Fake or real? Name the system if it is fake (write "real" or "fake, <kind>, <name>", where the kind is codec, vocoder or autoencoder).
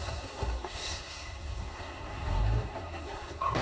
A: fake, codec, SNAC